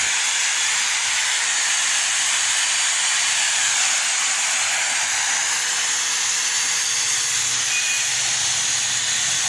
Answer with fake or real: real